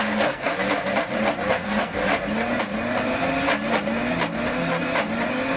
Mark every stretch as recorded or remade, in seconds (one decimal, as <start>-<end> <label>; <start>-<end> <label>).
0.0-0.5 remade; 0.5-1.5 recorded; 1.5-2.0 remade; 2.0-5.6 recorded